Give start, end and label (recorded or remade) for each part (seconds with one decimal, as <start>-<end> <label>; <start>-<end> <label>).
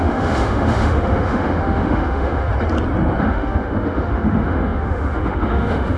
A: 0.0-2.5 remade; 2.5-3.2 recorded; 3.2-6.0 remade